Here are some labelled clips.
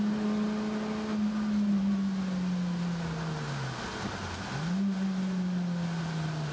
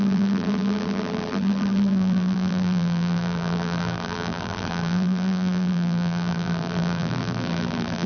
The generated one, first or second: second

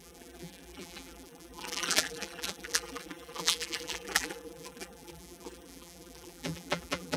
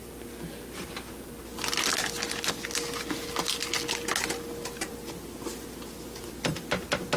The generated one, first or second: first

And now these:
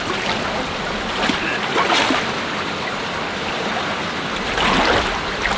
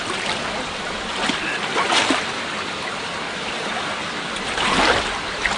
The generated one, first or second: second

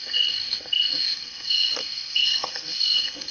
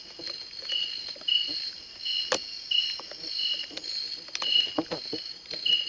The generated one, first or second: first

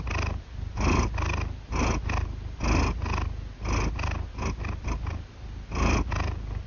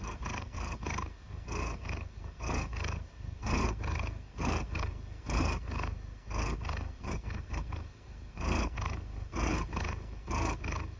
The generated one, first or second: second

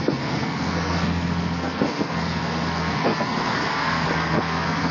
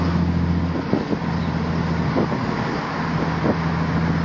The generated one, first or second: first